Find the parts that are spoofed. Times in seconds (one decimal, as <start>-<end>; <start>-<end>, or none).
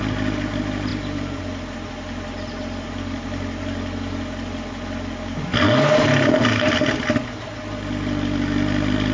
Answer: none